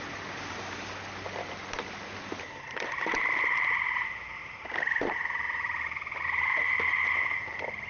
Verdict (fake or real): real